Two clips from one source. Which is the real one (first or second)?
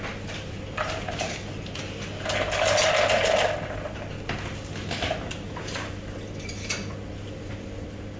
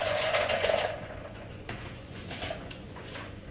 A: first